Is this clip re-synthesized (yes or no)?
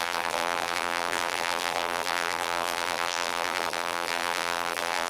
yes